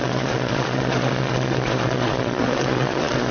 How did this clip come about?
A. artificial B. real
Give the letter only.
A